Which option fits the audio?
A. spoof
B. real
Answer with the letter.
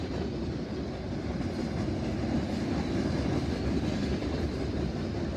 B